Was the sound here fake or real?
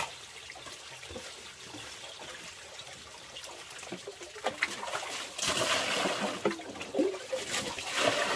real